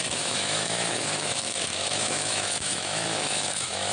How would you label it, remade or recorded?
remade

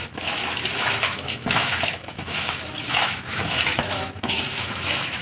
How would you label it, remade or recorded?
remade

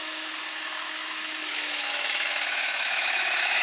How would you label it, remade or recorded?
remade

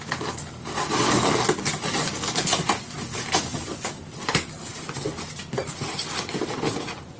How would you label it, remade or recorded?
recorded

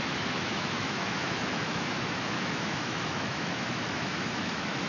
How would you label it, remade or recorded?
remade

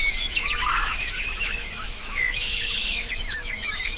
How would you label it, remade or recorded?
remade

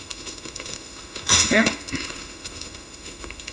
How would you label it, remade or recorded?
remade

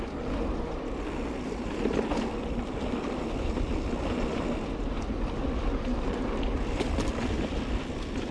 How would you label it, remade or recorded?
recorded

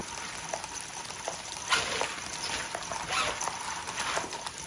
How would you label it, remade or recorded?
recorded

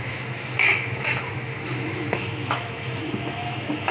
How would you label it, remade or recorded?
remade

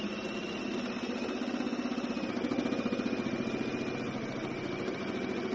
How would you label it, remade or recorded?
recorded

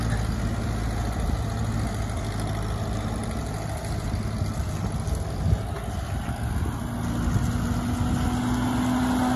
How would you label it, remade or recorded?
recorded